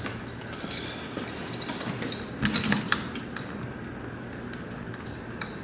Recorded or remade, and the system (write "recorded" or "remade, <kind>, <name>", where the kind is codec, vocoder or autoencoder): recorded